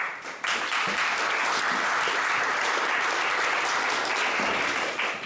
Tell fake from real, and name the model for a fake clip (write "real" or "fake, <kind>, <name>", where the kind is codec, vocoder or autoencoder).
real